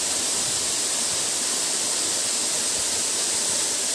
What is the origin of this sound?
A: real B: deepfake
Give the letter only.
A